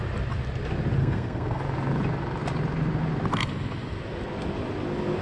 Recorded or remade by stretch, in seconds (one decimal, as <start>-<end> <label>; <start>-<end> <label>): 0.0-1.0 recorded; 1.0-1.6 remade; 1.6-5.2 recorded